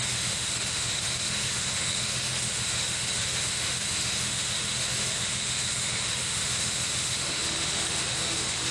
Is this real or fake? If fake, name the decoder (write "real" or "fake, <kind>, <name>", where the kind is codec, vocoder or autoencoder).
fake, autoencoder, DAC-VAE